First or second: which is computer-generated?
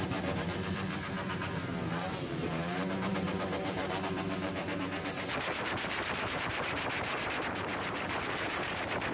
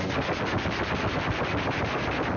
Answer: first